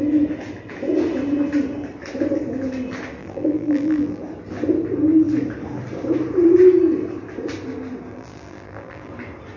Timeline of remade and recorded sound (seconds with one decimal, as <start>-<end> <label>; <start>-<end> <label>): 0.0-3.2 recorded; 3.2-4.2 remade; 4.2-8.1 recorded; 8.1-9.1 remade; 9.1-9.6 recorded